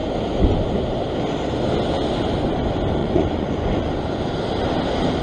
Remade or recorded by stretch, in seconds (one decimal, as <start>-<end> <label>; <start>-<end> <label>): 0.0-3.0 recorded; 3.0-3.9 remade; 3.9-5.2 recorded